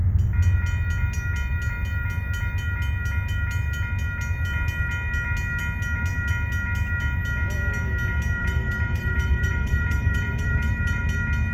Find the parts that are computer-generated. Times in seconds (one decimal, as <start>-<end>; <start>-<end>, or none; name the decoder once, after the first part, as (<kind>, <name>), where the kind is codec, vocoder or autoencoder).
8.4-11.0 (vocoder, BigVGAN v2)